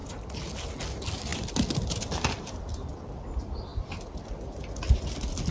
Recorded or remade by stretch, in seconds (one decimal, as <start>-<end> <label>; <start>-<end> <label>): 0.0-5.5 recorded